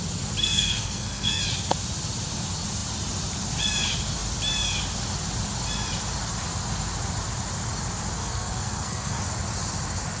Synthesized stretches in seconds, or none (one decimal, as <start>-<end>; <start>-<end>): 0.4-1.4; 8.2-9.2

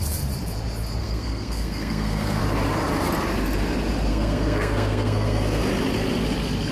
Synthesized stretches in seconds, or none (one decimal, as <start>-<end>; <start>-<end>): 1.0-2.4; 4.1-5.6

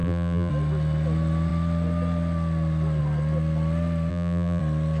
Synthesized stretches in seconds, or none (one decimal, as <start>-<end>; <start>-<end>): 0.0-0.5; 4.1-4.6